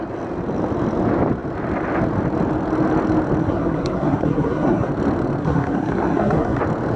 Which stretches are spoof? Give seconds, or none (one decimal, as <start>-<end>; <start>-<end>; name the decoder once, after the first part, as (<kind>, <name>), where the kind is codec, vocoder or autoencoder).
3.4-4.9 (codec, SNAC); 5.4-6.6